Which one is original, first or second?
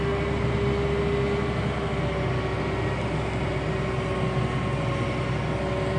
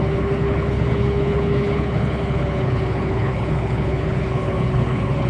first